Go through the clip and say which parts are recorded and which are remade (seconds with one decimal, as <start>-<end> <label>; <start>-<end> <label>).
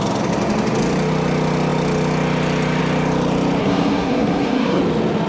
0.0-3.6 recorded; 3.6-4.8 remade; 4.8-5.3 recorded